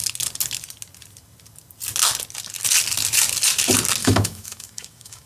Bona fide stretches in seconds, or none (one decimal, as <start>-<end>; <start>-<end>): 0.0-4.0